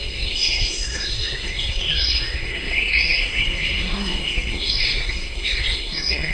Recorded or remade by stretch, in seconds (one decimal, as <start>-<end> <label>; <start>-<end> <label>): 0.0-6.3 remade